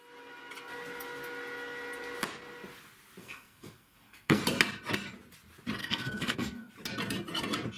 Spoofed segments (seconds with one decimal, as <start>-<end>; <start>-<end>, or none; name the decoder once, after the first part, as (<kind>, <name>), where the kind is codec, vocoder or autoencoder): 3.2-4.4 (codec, SNAC); 5.8-6.7